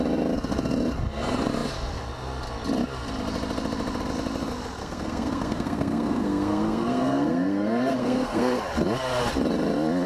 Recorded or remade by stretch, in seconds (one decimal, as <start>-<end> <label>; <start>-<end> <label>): 0.0-4.8 recorded; 4.8-8.6 remade; 8.6-10.1 recorded